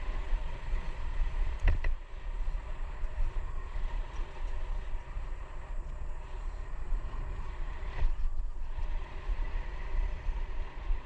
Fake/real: fake